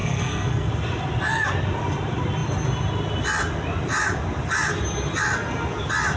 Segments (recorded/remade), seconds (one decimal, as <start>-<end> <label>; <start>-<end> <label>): 0.0-0.7 remade; 0.7-6.2 recorded